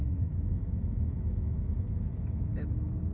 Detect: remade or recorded remade